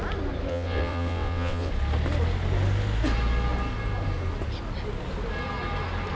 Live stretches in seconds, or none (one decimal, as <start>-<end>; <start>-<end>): 0.0-0.5; 1.7-6.2